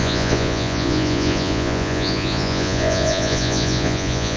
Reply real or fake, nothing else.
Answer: fake